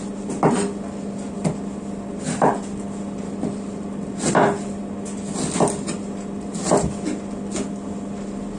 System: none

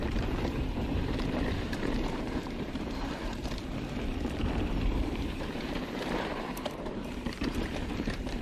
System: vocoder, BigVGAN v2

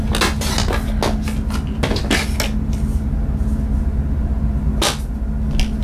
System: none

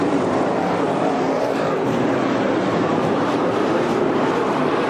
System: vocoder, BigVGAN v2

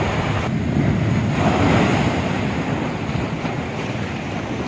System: none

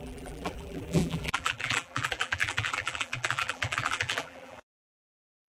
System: vocoder, BigVGAN v2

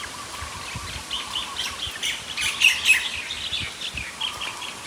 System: none